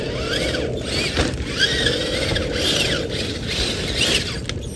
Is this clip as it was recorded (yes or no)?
yes